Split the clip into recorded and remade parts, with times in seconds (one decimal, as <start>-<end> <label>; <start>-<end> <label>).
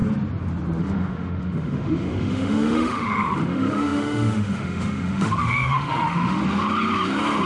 0.0-0.8 recorded; 0.8-6.4 remade; 6.4-7.5 recorded